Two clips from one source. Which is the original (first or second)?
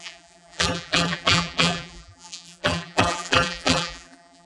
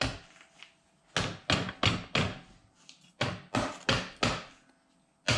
second